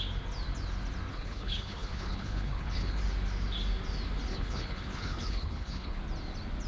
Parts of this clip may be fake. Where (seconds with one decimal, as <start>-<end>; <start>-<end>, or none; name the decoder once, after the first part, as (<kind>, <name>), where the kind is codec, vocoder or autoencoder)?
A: 1.1-3.0 (codec, HILCodec); 4.3-6.0